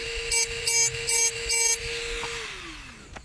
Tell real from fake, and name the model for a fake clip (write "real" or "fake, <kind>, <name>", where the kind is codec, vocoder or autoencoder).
real